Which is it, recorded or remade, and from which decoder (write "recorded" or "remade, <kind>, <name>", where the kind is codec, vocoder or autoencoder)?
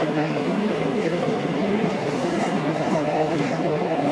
remade, codec, SNAC